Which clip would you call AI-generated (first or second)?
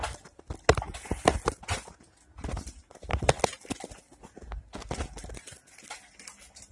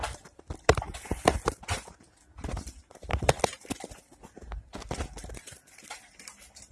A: second